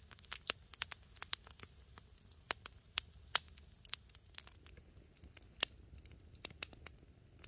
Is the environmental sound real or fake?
real